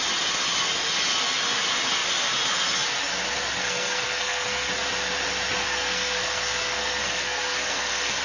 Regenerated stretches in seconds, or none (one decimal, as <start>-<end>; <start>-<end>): 3.6-4.7; 5.6-8.2